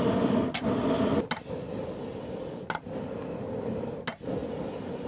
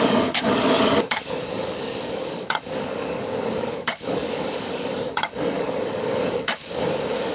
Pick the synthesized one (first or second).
second